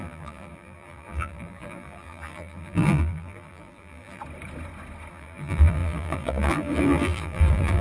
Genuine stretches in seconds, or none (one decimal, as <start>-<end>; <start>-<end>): 4.2-5.1